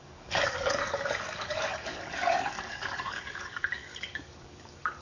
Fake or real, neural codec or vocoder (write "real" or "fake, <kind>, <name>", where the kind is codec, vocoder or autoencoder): fake, codec, DAC